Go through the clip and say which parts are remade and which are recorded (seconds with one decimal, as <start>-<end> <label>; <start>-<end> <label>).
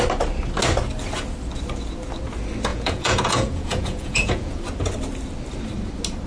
0.0-2.7 recorded; 2.7-4.6 remade; 4.6-6.3 recorded